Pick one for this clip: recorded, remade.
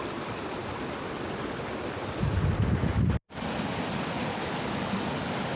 recorded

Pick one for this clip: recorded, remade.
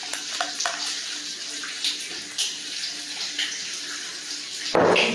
recorded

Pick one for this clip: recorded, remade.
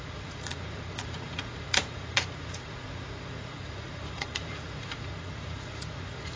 remade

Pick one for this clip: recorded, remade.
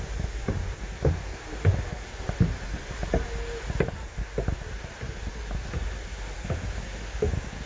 recorded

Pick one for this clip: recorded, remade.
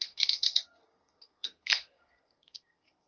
remade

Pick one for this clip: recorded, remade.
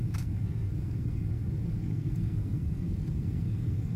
remade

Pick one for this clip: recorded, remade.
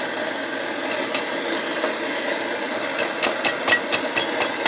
recorded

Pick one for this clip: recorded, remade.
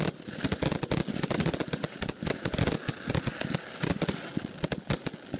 recorded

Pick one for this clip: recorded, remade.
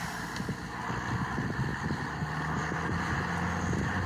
recorded